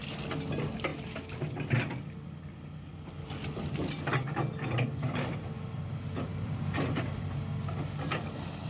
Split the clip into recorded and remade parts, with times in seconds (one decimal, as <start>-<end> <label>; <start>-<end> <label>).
0.0-8.7 recorded